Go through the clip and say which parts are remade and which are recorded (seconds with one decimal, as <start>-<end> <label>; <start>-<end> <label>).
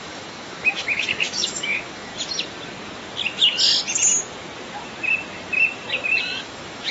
0.0-2.1 remade; 2.1-6.2 recorded; 6.2-6.9 remade